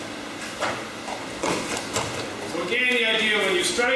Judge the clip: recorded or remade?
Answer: recorded